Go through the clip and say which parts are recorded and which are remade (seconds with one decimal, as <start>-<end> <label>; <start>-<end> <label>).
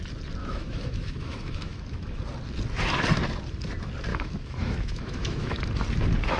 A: 0.0-0.4 recorded; 0.4-2.2 remade; 2.2-4.1 recorded; 4.1-5.6 remade; 5.6-6.4 recorded